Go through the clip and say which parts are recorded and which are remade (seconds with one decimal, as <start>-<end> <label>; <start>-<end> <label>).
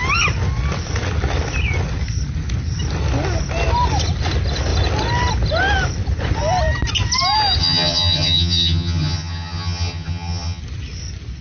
0.0-7.6 recorded; 7.6-10.6 remade; 10.6-11.4 recorded